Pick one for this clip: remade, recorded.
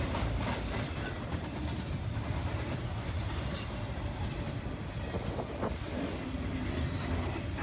recorded